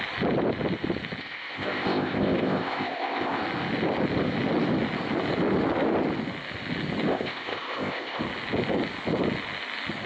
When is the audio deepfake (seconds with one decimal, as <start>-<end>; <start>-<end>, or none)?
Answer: 1.2-3.4; 7.1-8.2